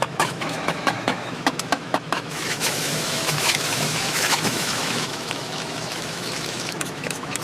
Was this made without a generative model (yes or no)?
no